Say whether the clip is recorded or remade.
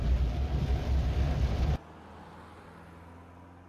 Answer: recorded